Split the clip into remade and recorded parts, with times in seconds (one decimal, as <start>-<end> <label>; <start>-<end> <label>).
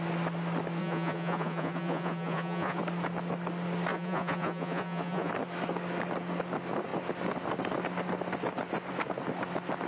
0.0-0.8 recorded; 0.8-2.8 remade; 2.8-3.9 recorded; 3.9-5.3 remade; 5.3-9.9 recorded